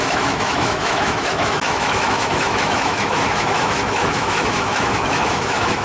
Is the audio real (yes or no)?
no